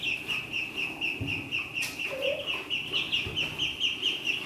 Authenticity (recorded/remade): recorded